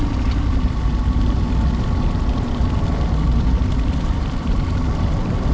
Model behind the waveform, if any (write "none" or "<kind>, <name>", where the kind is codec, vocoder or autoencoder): none